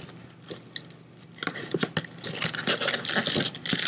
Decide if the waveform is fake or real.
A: real